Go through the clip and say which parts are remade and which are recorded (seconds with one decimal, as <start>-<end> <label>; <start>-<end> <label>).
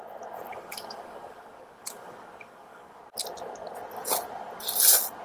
0.0-0.5 recorded; 0.5-3.0 remade; 3.0-5.2 recorded